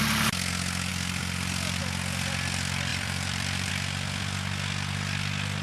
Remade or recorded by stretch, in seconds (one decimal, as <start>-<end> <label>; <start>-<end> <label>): 0.0-2.9 recorded; 2.9-3.7 remade; 3.7-5.6 recorded